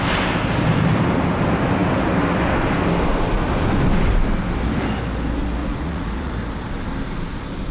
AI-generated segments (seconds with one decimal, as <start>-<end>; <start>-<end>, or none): 5.6-6.3